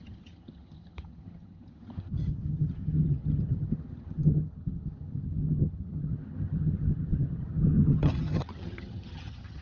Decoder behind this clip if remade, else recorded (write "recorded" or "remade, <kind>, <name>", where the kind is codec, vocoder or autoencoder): remade, vocoder, HiFi-GAN